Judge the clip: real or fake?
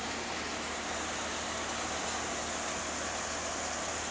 real